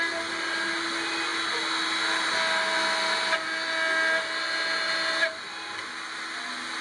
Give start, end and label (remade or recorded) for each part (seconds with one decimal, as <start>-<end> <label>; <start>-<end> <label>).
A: 0.0-6.8 recorded